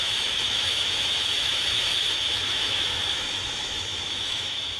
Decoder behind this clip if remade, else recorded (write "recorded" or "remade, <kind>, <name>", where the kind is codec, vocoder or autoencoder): remade, autoencoder, DAC-VAE